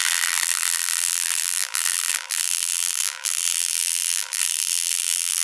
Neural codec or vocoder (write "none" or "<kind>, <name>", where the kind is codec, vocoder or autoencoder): vocoder, BigVGAN v2